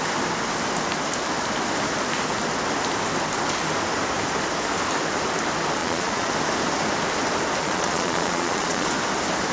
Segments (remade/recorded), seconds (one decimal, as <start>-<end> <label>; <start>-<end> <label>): 0.0-5.8 recorded; 5.8-6.3 remade; 6.3-7.6 recorded; 7.6-8.9 remade; 8.9-9.5 recorded